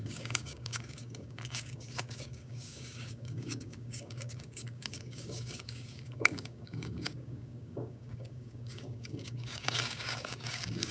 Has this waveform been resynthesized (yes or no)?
yes